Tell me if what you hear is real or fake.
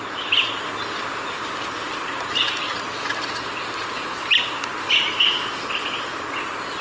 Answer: real